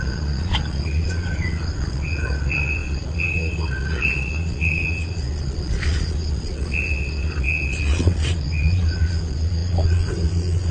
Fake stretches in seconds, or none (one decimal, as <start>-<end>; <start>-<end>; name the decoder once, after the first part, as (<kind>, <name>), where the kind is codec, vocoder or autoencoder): 0.0-10.7 (vocoder, Vocos)